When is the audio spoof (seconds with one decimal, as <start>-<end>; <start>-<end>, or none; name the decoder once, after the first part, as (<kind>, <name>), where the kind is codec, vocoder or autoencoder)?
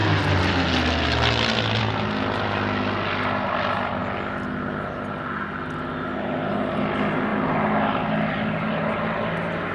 none